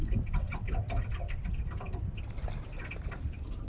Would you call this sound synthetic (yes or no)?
yes